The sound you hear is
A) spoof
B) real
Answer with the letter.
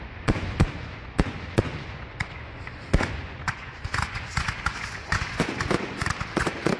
A